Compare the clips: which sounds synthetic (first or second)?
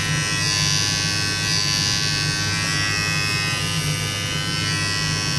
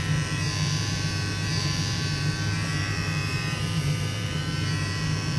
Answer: second